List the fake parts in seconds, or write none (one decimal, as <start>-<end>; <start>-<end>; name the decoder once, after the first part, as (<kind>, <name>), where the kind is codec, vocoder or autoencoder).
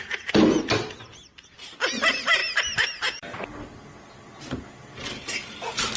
none